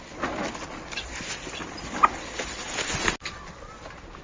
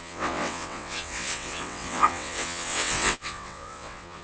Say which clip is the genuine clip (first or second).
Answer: first